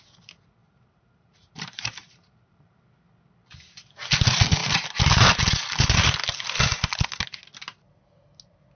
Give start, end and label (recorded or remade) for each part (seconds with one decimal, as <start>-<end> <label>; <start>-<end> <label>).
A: 0.0-0.6 recorded; 0.6-3.1 remade; 3.1-4.6 recorded; 4.6-5.4 remade; 5.4-8.8 recorded